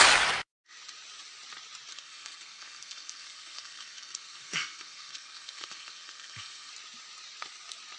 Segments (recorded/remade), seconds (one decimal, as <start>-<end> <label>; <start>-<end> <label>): 0.0-1.9 recorded; 1.9-6.7 remade; 6.7-8.0 recorded

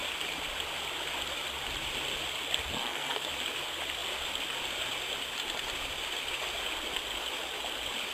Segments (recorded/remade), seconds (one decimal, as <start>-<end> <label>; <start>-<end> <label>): 0.0-2.7 recorded; 2.7-3.3 remade; 3.3-8.1 recorded